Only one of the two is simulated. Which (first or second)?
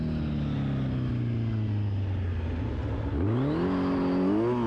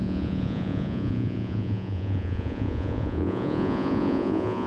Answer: second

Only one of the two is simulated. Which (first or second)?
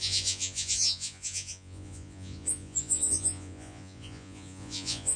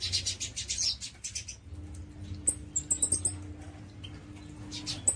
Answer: first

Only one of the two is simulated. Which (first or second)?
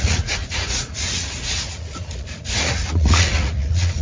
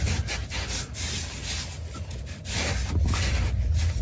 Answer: first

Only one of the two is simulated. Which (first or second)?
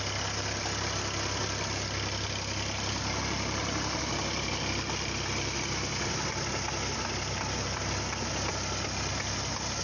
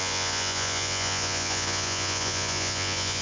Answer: second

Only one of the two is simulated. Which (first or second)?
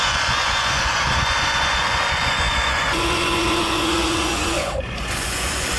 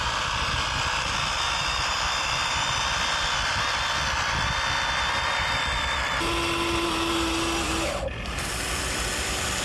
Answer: first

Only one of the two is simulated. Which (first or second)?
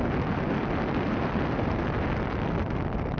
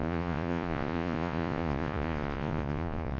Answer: second